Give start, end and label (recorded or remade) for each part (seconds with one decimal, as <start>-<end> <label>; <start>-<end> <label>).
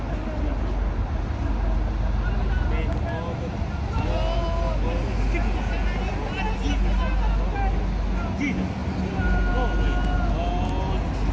0.0-11.3 recorded